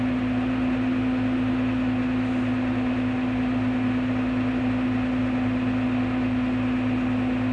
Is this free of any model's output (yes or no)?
yes